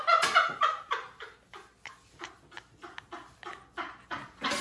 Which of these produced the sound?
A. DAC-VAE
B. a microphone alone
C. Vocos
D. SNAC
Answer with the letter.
B